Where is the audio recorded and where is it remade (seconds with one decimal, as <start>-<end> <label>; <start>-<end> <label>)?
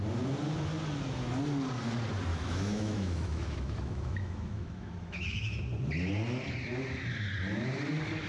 0.0-2.3 recorded; 2.3-5.6 remade; 5.6-8.3 recorded